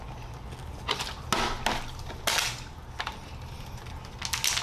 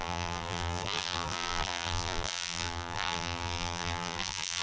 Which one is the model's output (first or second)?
second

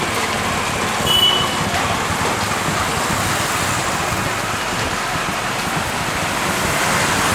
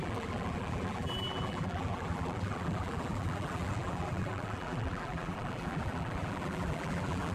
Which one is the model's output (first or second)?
second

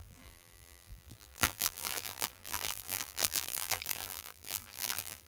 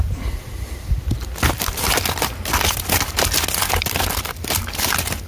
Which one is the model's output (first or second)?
first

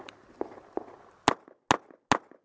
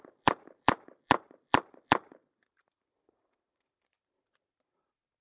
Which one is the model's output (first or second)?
second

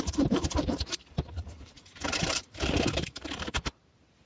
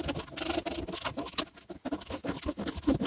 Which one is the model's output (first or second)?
first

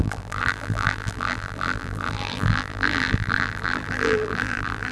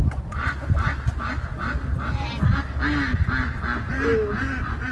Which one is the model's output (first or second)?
first